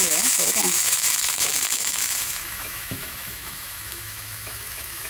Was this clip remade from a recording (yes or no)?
yes